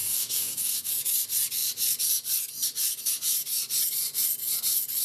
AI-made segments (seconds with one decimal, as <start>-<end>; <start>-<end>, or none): 0.0-0.9